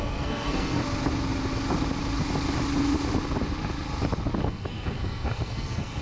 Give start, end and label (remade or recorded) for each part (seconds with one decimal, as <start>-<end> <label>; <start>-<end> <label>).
0.0-0.8 remade; 0.8-4.4 recorded; 4.4-6.0 remade

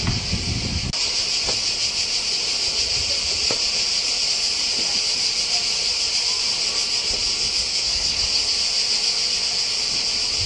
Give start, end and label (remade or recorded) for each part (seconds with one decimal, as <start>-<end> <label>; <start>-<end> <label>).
0.0-7.7 recorded; 7.7-8.2 remade; 8.2-10.5 recorded

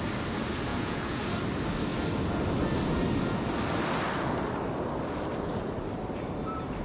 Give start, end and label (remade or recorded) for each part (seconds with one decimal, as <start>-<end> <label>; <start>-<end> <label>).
0.0-0.7 recorded; 0.7-1.2 remade; 1.2-6.8 recorded

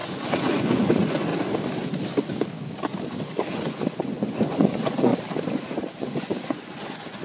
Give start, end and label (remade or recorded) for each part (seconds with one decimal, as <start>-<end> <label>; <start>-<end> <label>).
0.0-1.3 remade; 1.3-3.5 recorded; 3.5-5.1 remade; 5.1-6.0 recorded; 6.0-7.2 remade